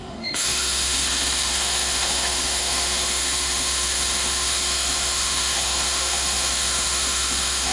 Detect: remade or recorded remade